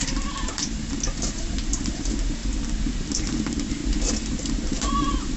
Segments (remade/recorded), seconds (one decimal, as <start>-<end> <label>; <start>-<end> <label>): 0.0-2.4 remade; 2.4-3.4 recorded; 3.4-3.8 remade; 3.8-4.3 recorded; 4.3-5.4 remade